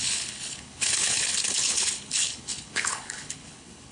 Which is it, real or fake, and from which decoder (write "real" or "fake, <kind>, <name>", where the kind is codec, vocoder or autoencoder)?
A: fake, codec, HILCodec